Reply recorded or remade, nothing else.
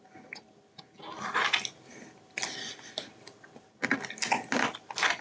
recorded